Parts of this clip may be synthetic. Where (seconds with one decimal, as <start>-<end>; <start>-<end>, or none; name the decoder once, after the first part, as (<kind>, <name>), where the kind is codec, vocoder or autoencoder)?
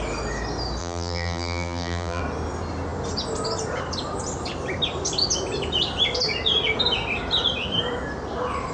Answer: 0.8-2.2 (vocoder, BigVGAN v2)